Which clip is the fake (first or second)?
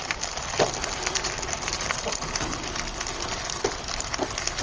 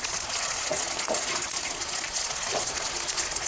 second